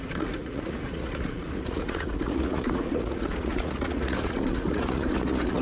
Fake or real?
fake